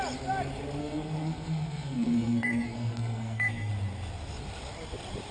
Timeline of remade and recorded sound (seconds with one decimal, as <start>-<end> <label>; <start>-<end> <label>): 0.0-0.8 recorded; 0.8-3.7 remade; 3.7-5.3 recorded